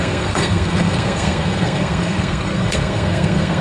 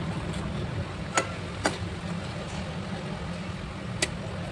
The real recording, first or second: second